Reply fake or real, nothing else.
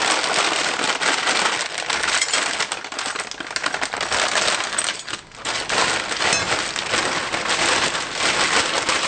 real